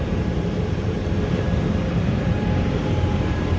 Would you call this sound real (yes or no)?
no